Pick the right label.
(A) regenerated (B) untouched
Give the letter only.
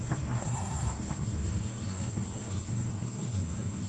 A